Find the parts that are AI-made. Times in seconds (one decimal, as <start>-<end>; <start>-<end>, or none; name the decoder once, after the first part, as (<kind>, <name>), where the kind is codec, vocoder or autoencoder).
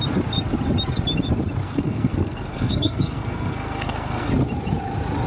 1.6-4.3 (codec, SNAC)